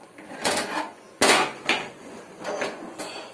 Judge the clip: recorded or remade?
remade